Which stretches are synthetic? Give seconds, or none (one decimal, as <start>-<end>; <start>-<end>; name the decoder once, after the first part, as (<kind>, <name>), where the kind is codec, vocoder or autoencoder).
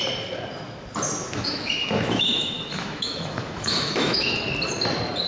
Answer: 1.2-4.4 (autoencoder, DAC-VAE)